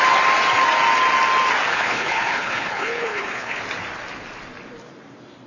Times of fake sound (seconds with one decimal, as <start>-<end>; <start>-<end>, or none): 1.7-3.6